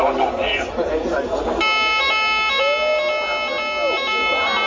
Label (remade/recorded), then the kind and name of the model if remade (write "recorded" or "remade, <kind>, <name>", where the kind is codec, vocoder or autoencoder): recorded